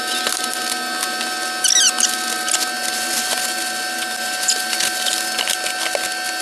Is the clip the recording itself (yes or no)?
yes